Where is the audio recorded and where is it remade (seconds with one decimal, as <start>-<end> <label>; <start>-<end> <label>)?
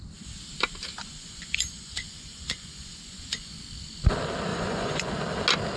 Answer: 0.0-1.0 recorded; 1.0-3.6 remade; 3.6-4.5 recorded; 4.5-5.1 remade; 5.1-5.8 recorded